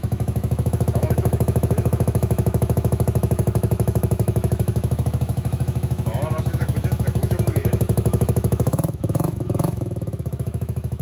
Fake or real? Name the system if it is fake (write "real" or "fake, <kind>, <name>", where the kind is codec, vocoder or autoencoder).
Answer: fake, autoencoder, DAC-VAE